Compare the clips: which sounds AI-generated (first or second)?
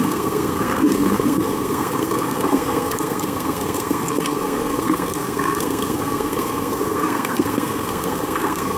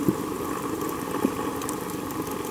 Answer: first